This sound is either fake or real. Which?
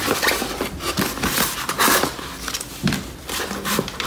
real